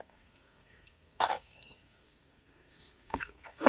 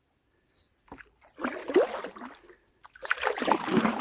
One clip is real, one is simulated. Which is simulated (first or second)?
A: first